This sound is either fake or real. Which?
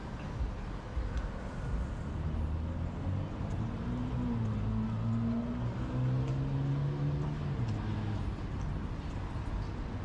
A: real